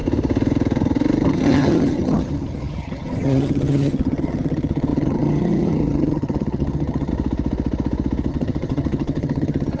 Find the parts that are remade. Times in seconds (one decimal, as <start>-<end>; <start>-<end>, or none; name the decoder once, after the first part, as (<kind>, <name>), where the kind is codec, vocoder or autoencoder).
1.3-7.1 (vocoder, HiFi-GAN); 8.3-9.8